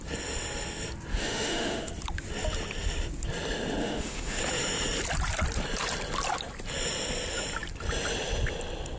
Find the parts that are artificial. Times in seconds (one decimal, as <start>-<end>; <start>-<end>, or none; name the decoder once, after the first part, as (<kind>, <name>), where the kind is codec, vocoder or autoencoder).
1.1-1.9 (autoencoder, DAC-VAE); 3.8-4.4